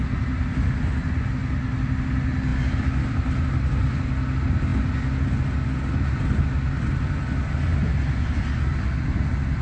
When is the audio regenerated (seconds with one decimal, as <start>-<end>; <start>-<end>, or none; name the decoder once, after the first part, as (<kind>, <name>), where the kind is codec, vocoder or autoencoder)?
none